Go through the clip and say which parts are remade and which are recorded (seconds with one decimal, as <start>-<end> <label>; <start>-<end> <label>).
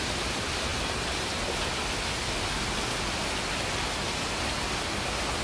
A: 0.0-5.4 recorded